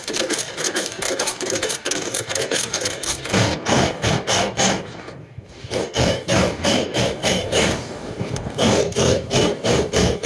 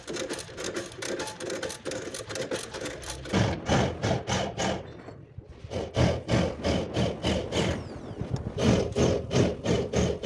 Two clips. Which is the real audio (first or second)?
second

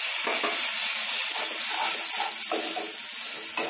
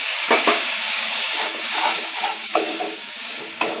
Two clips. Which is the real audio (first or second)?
first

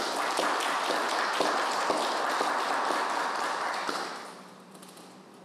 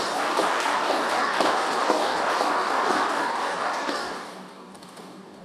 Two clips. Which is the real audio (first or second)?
first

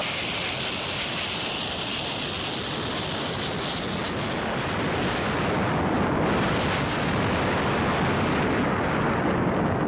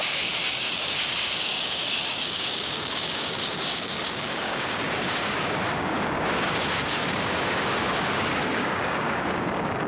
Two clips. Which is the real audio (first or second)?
first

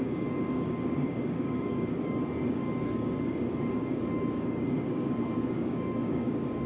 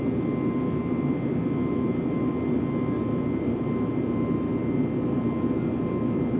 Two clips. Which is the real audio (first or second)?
second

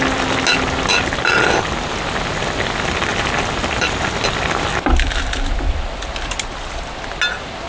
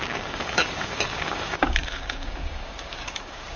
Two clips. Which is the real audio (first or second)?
first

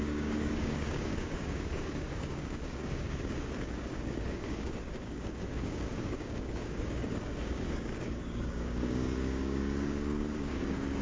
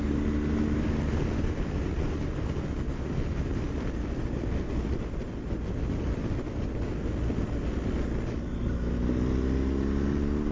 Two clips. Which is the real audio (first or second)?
second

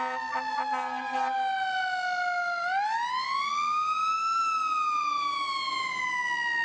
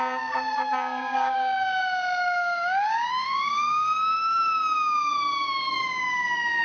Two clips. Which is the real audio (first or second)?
first